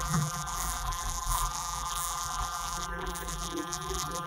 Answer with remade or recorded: remade